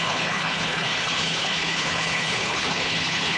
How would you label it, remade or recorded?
remade